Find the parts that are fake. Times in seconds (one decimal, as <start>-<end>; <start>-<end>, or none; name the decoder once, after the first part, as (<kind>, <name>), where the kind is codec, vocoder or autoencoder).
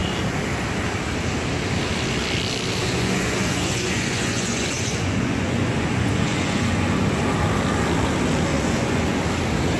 2.8-7.0 (vocoder, Vocos); 8.5-9.2